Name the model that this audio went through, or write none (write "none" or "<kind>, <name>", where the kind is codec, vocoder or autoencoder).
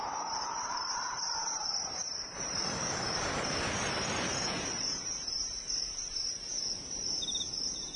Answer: vocoder, BigVGAN v2